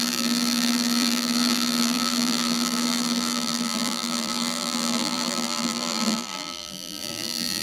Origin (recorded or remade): remade